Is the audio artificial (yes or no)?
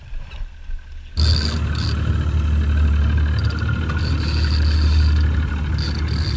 no